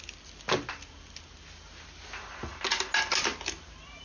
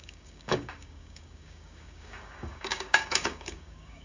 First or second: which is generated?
second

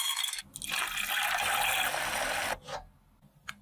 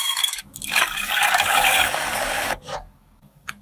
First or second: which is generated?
second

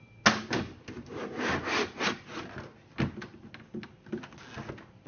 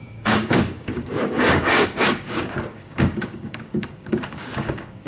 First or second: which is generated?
second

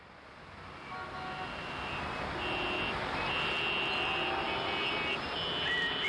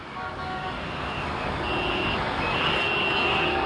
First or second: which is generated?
second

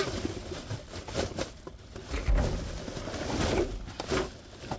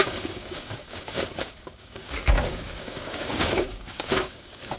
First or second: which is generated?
second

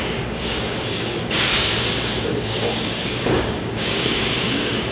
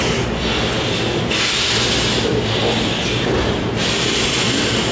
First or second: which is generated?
first